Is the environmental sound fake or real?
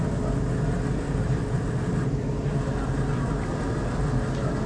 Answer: real